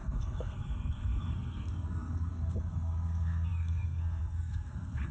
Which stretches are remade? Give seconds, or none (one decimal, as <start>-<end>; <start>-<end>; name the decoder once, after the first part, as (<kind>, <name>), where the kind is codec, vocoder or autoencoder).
0.0-5.1 (codec, SNAC)